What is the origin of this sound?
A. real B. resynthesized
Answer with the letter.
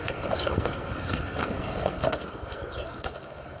B